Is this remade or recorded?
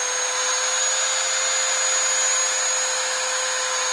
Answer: recorded